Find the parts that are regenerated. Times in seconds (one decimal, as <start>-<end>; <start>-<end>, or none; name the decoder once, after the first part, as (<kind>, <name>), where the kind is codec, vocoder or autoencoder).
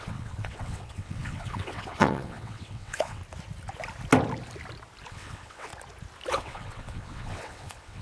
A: 0.0-3.2 (vocoder, WaveNeXt); 5.1-5.7; 6.3-8.0